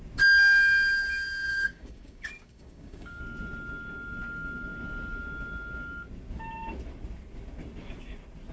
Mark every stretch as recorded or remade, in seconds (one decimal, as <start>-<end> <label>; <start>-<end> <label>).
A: 0.0-1.5 recorded; 1.5-3.2 remade; 3.2-8.5 recorded

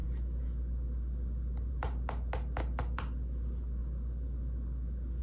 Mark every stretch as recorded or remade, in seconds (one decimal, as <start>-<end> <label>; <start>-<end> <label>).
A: 0.0-5.2 recorded

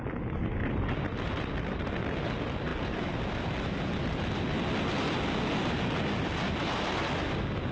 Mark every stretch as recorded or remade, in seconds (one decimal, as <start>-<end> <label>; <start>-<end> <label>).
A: 0.0-7.7 recorded

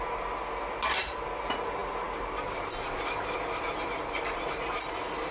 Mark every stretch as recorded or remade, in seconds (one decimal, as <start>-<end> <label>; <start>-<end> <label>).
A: 0.0-5.3 recorded

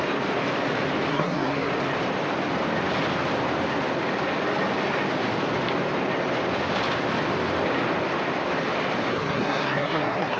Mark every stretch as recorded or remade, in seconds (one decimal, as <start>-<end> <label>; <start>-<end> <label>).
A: 0.0-1.1 recorded; 1.1-1.7 remade; 1.7-9.1 recorded; 9.1-10.4 remade

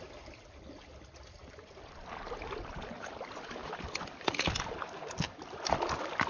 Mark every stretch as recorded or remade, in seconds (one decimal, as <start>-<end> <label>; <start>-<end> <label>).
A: 0.0-6.3 recorded

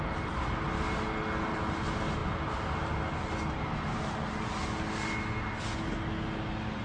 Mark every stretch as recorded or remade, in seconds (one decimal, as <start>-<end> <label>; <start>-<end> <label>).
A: 0.0-6.8 recorded